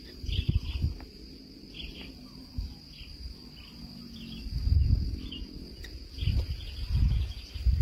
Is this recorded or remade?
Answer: recorded